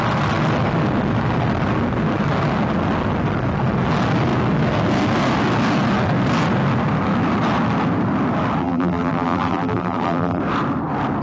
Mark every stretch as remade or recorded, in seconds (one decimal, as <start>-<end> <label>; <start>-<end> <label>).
0.0-8.6 recorded; 8.6-10.4 remade; 10.4-11.2 recorded